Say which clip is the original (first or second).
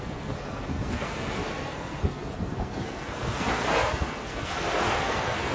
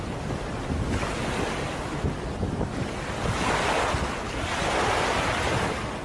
second